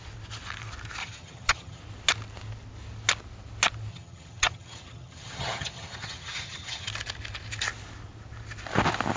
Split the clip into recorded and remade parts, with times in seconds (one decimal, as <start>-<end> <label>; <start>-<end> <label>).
0.0-1.0 recorded; 1.0-1.8 remade; 1.8-3.9 recorded; 3.9-6.9 remade; 6.9-9.2 recorded